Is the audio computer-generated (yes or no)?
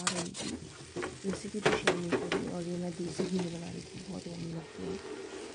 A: no